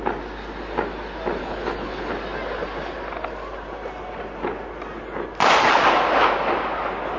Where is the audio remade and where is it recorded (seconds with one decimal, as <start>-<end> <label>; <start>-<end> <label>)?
0.0-1.4 recorded; 1.4-2.1 remade; 2.1-7.2 recorded